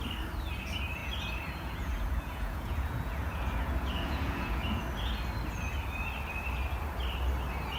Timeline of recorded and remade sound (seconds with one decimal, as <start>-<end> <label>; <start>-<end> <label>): 0.0-1.0 recorded; 1.0-4.8 remade; 4.8-7.8 recorded